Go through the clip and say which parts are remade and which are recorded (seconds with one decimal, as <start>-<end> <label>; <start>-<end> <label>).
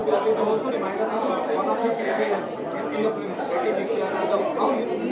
0.0-1.8 recorded; 1.8-2.4 remade; 2.4-5.1 recorded